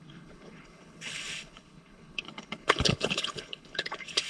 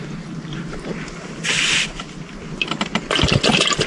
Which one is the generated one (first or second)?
first